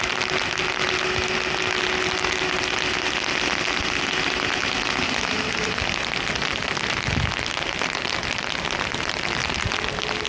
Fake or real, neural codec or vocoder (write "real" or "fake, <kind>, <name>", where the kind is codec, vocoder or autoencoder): real